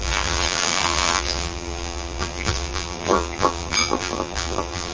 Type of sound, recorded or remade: remade